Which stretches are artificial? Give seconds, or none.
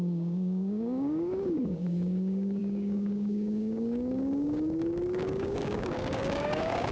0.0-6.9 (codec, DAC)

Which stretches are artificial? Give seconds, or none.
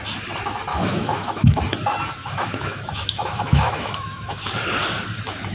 0.7-1.6 (autoencoder, DAC-VAE); 2.2-4.4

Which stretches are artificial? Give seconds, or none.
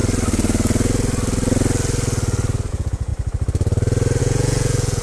2.7-3.1 (vocoder, Vocos); 4.2-5.0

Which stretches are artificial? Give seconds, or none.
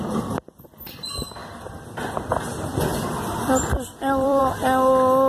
2.9-4.4 (vocoder, BigVGAN v2)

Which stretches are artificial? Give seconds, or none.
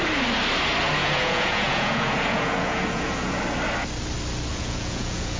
1.0-3.3 (vocoder, Vocos); 4.5-5.4